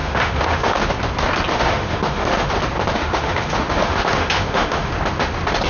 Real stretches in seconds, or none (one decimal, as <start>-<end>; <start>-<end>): 0.9-1.5; 2.5-2.9; 4.9-5.7